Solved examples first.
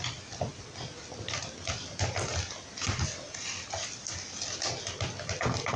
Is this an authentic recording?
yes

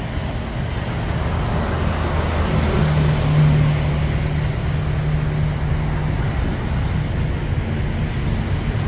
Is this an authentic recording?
yes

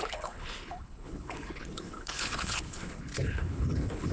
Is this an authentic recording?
no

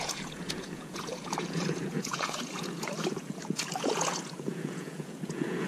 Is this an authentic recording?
no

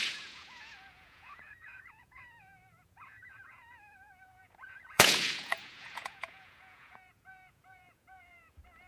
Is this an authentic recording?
no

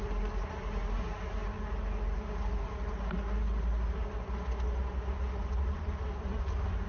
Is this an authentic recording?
yes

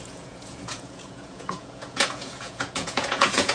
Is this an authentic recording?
no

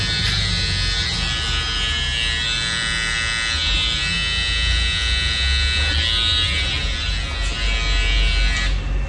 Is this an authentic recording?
yes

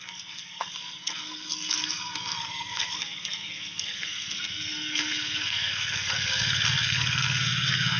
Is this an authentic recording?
no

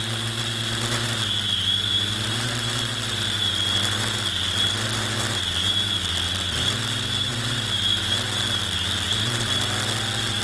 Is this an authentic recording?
yes